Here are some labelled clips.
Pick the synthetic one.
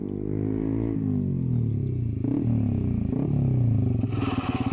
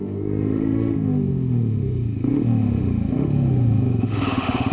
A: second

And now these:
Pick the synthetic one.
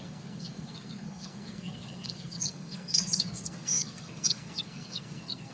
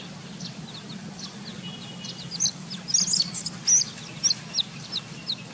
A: first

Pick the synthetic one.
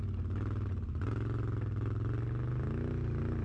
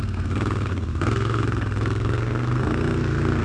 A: second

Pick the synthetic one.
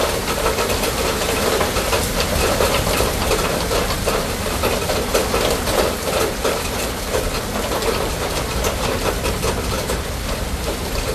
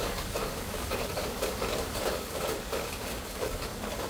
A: second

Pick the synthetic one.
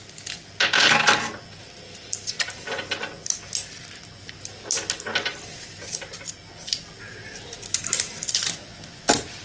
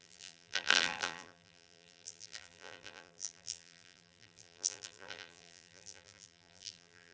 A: second